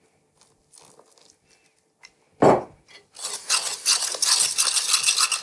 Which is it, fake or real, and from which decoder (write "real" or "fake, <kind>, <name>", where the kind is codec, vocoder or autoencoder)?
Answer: real